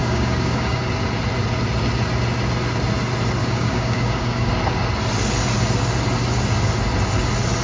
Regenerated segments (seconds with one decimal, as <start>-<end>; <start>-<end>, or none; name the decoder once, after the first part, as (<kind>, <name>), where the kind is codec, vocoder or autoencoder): 0.0-0.8 (codec, DAC); 3.4-4.5